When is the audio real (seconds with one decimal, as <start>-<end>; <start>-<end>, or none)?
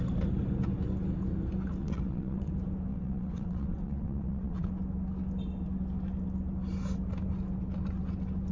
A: 0.0-1.8; 2.5-2.9; 4.7-8.5